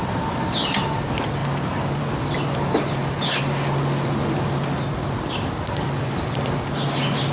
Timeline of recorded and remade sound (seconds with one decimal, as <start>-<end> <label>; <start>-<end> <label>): 0.0-7.3 recorded